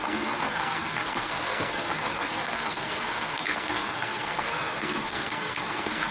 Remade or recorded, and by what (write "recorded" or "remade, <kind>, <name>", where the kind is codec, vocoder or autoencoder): remade, codec, SNAC